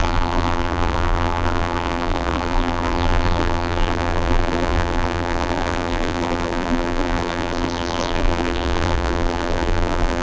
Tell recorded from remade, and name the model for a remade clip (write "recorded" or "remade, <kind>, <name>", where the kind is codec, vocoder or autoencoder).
remade, vocoder, BigVGAN v2